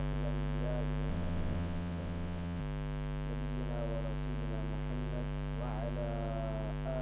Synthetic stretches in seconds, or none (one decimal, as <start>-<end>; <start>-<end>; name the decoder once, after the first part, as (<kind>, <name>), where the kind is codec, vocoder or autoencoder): 1.1-2.6 (vocoder, WaveNeXt)